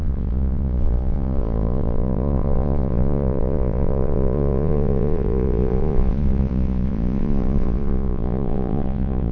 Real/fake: fake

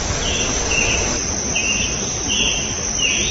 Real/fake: real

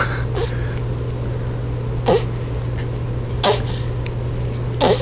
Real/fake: real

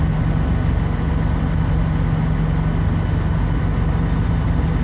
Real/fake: real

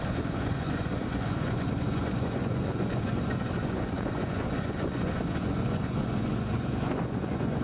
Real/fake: fake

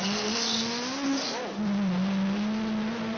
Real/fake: real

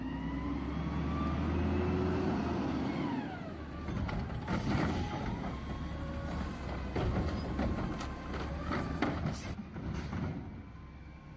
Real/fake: real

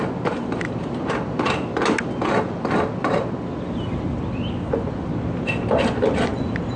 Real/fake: real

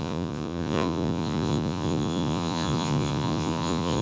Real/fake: fake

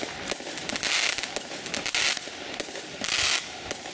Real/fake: real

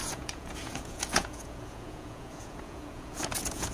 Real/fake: fake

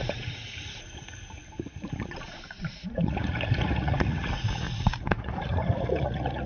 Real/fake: fake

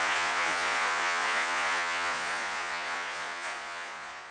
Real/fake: fake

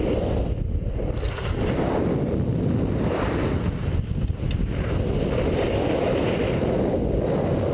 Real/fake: real